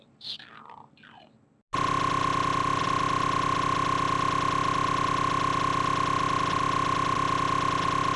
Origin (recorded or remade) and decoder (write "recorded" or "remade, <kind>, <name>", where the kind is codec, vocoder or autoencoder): recorded